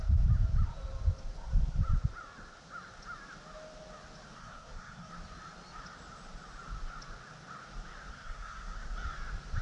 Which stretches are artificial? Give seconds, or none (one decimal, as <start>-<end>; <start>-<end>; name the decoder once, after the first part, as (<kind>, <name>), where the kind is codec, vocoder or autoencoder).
4.4-5.1 (codec, SNAC); 8.1-8.8